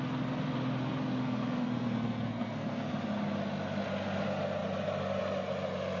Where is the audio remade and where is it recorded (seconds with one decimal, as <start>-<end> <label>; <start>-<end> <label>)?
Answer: 0.0-1.2 recorded; 1.2-2.9 remade; 2.9-6.0 recorded